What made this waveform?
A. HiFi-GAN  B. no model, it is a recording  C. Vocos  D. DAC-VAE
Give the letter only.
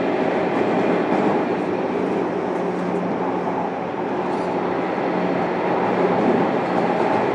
B